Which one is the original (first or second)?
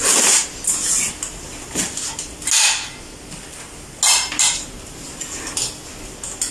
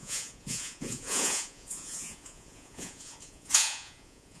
first